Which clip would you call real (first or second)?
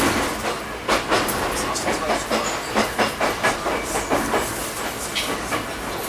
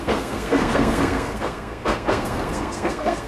first